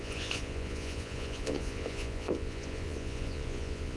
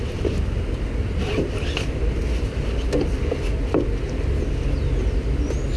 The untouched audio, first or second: second